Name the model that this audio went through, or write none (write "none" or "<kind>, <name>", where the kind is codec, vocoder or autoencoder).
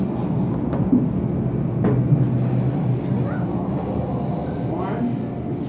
none